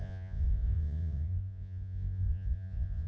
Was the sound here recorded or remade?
remade